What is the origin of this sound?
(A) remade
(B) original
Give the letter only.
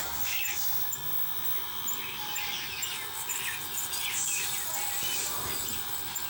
A